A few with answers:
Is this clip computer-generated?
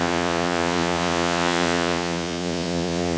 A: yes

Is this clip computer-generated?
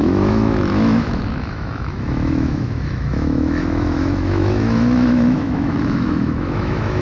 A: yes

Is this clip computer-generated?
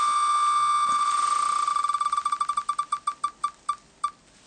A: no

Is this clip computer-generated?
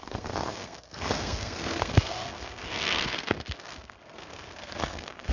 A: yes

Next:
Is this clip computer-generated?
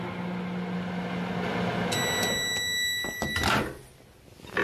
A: no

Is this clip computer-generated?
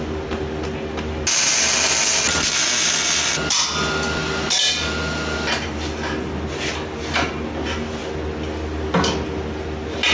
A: no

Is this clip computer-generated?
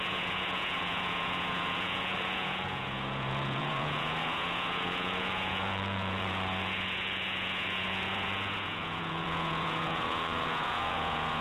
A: yes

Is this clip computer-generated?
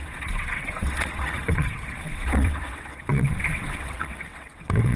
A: yes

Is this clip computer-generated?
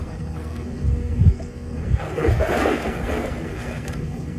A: yes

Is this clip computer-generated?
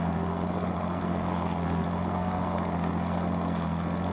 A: yes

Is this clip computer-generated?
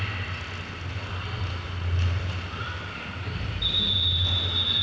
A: no